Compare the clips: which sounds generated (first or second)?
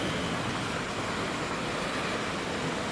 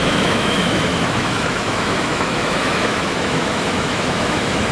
second